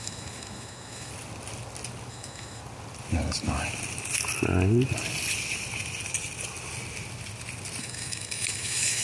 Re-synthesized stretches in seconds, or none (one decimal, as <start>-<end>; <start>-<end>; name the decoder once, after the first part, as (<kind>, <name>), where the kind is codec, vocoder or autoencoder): 0.0-1.1 (autoencoder, DAC-VAE); 2.1-2.6; 7.8-9.0